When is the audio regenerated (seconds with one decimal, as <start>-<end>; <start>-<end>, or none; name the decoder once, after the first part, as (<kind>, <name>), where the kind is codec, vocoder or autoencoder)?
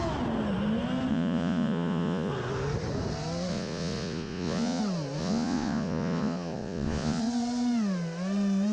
1.1-2.3 (vocoder, Vocos); 3.5-4.8; 5.2-7.2